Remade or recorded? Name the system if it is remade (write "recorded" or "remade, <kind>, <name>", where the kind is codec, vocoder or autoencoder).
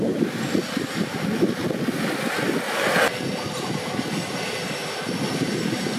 recorded